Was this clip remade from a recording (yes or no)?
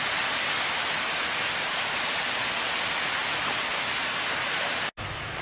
no